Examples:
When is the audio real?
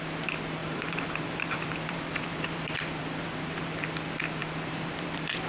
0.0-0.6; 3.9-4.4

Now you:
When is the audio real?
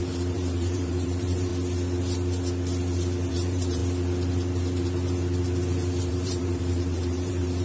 1.5-3.3; 3.8-6.1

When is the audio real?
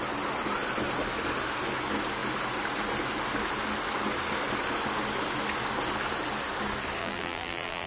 0.0-7.0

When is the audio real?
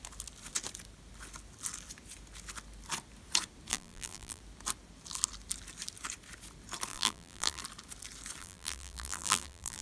0.0-3.7; 4.4-6.9; 7.6-8.4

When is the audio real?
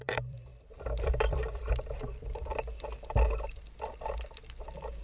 0.5-1.1; 2.5-5.0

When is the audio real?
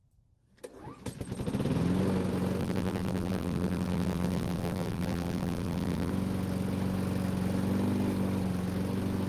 0.0-2.6; 6.1-9.3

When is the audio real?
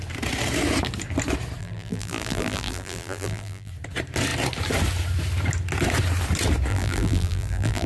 0.0-1.6; 3.7-6.7